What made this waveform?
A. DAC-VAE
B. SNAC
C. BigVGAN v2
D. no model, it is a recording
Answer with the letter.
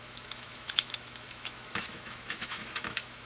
A